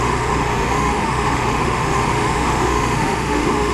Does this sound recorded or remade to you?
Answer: remade